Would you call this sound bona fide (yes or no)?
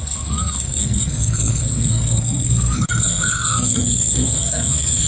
no